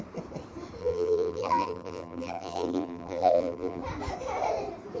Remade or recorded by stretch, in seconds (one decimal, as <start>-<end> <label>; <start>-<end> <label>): 0.0-0.8 recorded; 0.8-3.8 remade; 3.8-5.0 recorded